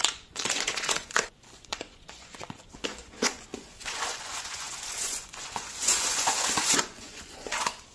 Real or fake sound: fake